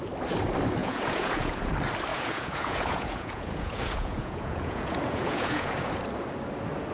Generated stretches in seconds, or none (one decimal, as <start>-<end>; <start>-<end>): 0.8-1.7; 2.1-6.0